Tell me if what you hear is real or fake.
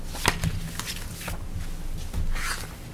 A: real